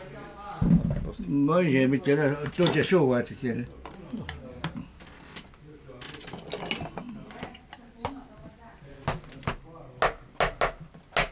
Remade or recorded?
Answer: recorded